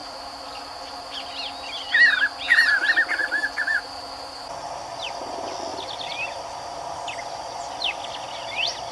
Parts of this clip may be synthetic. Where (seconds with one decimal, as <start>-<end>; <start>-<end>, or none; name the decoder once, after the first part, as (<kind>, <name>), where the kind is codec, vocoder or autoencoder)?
0.0-1.3 (vocoder, BigVGAN v2); 5.7-7.2